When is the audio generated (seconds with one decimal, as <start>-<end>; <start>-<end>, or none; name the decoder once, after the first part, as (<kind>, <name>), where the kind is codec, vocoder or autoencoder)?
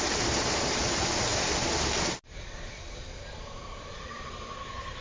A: 0.0-5.0 (vocoder, BigVGAN v2)